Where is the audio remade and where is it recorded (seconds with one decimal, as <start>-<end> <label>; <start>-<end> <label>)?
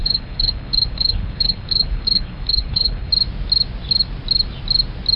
0.0-3.1 remade; 3.1-5.2 recorded